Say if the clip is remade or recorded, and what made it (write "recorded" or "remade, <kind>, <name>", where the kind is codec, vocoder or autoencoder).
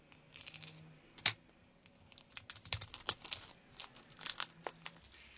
recorded